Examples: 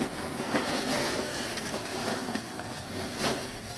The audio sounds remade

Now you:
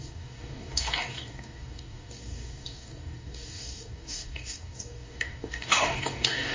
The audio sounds remade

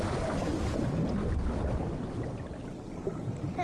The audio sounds recorded